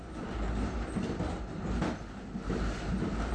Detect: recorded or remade recorded